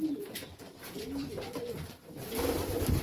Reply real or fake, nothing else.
fake